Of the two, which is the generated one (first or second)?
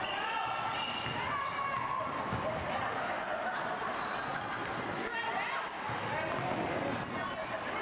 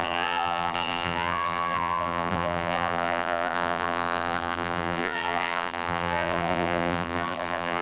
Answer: second